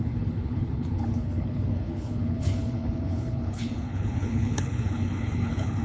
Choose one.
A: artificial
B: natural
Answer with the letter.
A